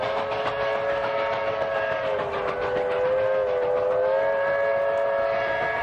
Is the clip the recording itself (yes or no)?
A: yes